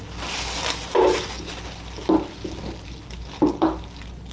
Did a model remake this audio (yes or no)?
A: no